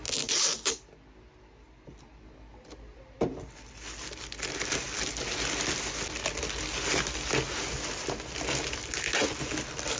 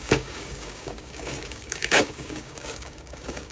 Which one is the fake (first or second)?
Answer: second